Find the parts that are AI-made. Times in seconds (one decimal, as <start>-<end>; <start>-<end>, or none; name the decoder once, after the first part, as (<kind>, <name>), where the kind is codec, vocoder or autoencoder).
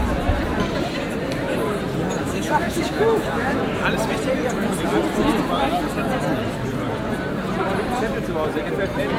2.2-3.6 (autoencoder, DAC-VAE)